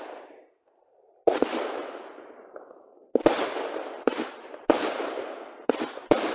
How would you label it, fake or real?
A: fake